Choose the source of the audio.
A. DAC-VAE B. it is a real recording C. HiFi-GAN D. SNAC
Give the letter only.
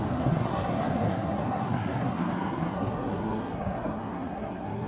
D